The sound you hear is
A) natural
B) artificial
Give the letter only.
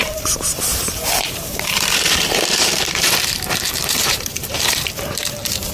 B